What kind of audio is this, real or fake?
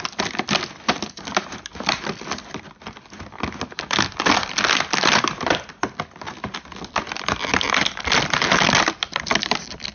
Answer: real